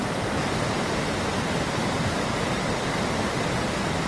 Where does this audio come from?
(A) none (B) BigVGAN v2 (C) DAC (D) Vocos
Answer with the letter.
A